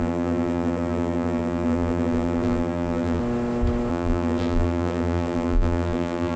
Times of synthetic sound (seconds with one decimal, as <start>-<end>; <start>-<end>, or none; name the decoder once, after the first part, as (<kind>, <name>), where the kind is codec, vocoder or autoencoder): 0.0-3.2 (vocoder, BigVGAN v2); 3.9-6.4